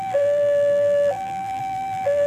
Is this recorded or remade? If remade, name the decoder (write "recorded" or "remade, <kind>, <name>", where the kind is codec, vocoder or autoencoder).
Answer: remade, vocoder, BigVGAN v2